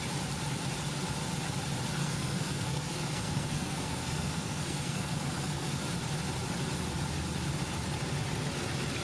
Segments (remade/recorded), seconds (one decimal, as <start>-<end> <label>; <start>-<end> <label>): 0.0-2.0 recorded; 2.0-5.7 remade; 5.7-9.0 recorded